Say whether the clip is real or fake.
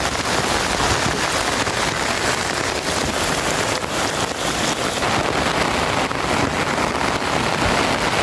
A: real